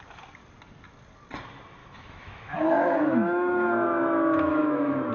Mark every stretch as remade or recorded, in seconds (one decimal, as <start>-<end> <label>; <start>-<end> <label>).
0.0-1.8 recorded; 1.8-5.1 remade